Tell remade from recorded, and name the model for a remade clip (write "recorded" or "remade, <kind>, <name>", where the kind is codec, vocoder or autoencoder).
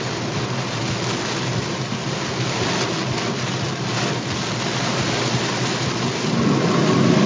recorded